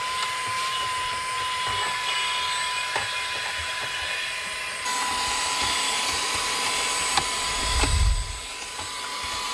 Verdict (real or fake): real